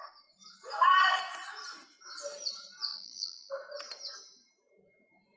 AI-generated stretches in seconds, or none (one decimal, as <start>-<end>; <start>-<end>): 2.9-3.5